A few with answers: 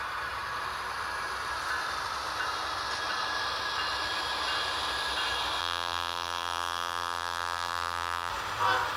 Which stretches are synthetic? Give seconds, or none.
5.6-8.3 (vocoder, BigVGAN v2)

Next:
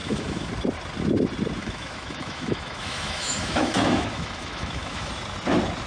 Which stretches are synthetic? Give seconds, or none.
0.0-0.5 (autoencoder, DAC-VAE); 1.6-5.1

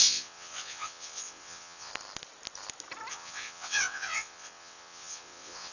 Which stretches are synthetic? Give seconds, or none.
0.0-1.9 (vocoder, WaveNeXt); 3.1-5.7

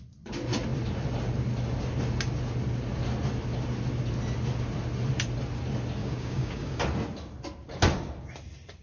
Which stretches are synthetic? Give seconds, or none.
6.0-6.8 (codec, DAC)

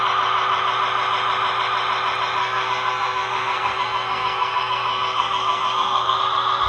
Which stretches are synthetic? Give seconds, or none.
2.4-6.2 (codec, SNAC)